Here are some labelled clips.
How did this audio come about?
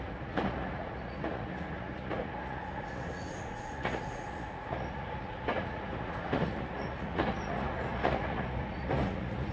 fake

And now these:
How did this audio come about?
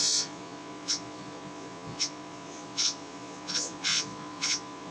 fake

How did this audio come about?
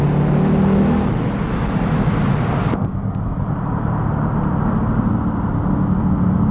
real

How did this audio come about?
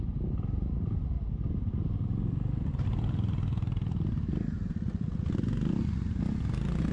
real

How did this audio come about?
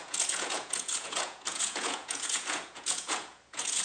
fake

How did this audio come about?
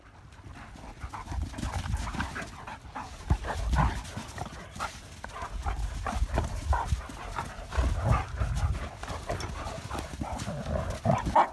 real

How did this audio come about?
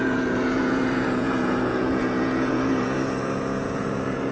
fake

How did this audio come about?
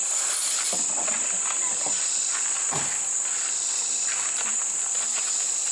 real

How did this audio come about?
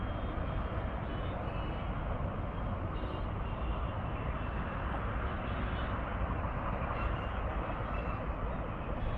real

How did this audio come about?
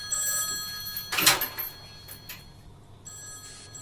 real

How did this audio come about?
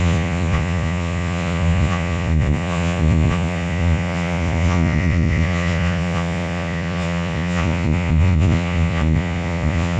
fake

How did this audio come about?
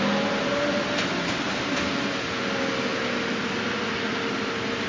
real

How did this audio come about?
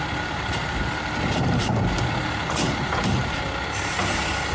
real